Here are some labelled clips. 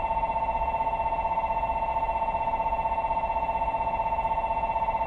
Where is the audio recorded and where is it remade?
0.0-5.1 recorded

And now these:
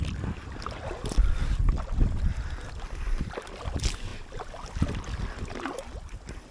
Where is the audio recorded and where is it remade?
0.0-1.2 recorded; 1.2-2.5 remade; 2.5-6.5 recorded

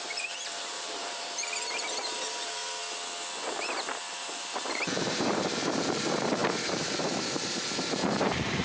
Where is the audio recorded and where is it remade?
0.0-2.6 remade; 2.6-3.9 recorded; 3.9-8.6 remade

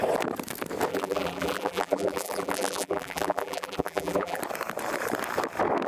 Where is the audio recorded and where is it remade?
0.0-0.9 recorded; 0.9-4.4 remade; 4.4-5.9 recorded